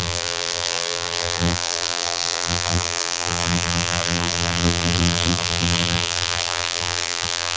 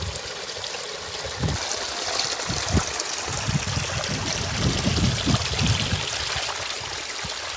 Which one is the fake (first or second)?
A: first